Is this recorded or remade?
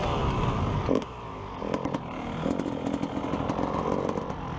recorded